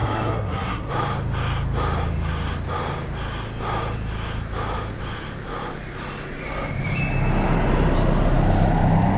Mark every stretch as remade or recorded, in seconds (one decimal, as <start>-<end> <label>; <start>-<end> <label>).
0.0-0.9 remade; 0.9-9.2 recorded